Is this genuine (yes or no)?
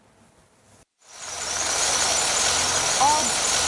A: yes